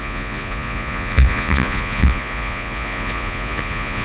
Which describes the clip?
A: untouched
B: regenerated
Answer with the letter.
B